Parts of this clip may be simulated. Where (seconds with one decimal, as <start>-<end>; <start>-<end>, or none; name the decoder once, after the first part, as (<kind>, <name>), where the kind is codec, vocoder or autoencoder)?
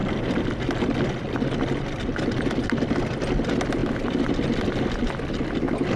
none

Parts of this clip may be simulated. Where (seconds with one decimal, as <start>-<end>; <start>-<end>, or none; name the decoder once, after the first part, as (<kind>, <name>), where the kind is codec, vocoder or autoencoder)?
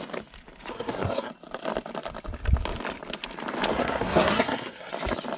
0.7-1.3 (codec, SNAC); 3.7-4.9